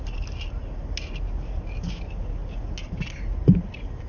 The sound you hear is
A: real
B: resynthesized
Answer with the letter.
A